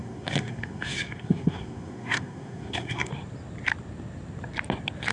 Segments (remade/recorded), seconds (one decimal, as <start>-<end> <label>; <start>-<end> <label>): 0.0-3.1 remade; 3.1-5.1 recorded